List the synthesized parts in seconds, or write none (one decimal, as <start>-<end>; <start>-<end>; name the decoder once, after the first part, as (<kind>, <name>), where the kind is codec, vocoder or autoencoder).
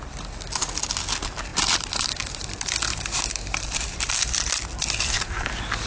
1.5-2.5 (vocoder, BigVGAN v2); 2.9-4.5